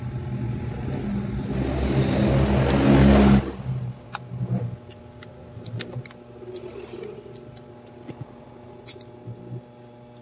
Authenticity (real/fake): real